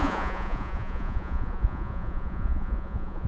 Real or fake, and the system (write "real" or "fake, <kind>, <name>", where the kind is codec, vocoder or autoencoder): fake, vocoder, Vocos